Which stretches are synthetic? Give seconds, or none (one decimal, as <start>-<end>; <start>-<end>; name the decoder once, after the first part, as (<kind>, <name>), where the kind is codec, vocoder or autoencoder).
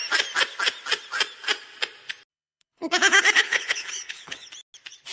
2.3-4.5 (codec, HILCodec)